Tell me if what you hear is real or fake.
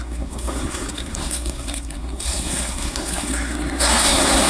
fake